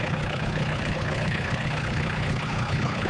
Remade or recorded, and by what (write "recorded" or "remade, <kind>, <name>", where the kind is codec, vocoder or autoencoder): remade, codec, HILCodec